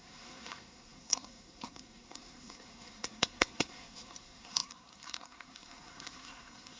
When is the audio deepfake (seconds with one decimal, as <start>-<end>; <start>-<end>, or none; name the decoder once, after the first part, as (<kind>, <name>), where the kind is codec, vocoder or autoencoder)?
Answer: 0.0-6.8 (codec, SNAC)